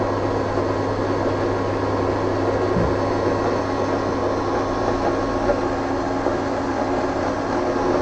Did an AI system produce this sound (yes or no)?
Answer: no